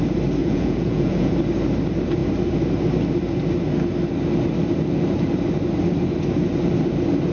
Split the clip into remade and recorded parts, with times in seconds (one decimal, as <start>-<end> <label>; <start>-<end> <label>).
0.0-0.4 recorded; 0.4-1.3 remade; 1.3-7.3 recorded